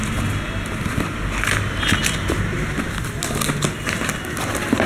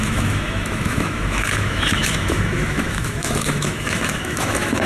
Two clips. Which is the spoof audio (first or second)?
second